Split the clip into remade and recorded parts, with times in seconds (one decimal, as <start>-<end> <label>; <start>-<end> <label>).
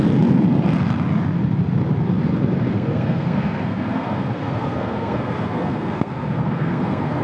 0.0-2.7 recorded; 2.7-7.2 remade